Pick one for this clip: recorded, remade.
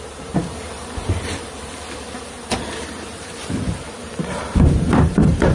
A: remade